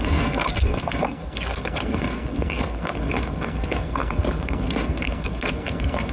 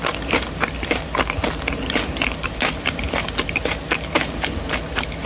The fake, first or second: first